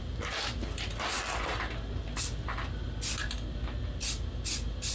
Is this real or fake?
real